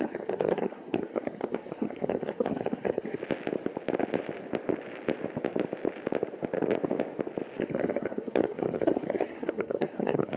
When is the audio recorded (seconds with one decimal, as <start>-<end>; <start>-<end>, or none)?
3.2-7.6